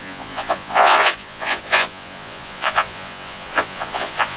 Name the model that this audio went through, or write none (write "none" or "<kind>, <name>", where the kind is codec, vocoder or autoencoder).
vocoder, Vocos